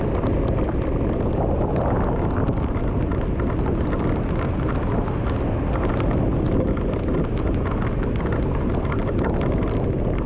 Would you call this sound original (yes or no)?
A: yes